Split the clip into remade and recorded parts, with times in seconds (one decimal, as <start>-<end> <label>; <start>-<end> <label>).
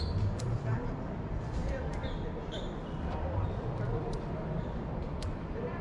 0.0-1.6 remade; 1.6-3.7 recorded; 3.7-5.8 remade